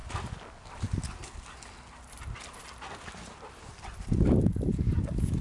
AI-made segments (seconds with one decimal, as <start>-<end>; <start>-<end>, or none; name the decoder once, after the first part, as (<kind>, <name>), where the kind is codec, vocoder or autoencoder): 4.7-5.4 (codec, DAC)